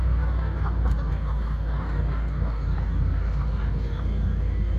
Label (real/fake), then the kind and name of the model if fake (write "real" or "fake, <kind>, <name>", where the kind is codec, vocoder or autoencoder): fake, codec, DAC